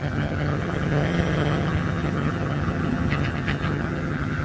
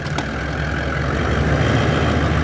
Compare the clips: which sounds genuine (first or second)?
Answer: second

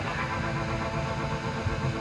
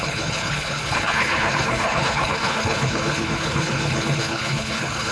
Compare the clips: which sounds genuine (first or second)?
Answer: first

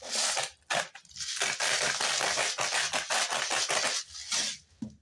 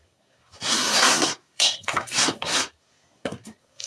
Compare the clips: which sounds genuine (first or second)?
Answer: first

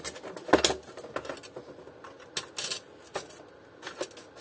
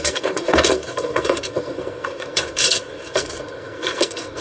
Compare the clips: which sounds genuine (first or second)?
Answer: first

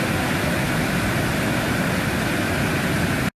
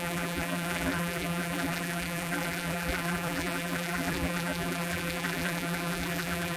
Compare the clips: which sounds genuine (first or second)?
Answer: first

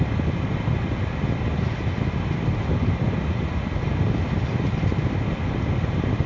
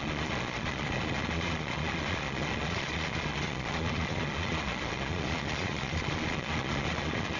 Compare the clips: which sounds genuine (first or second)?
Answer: first